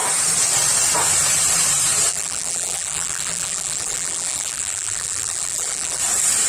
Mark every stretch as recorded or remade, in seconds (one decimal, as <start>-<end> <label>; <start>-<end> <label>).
0.0-2.1 recorded; 2.1-6.0 remade; 6.0-6.5 recorded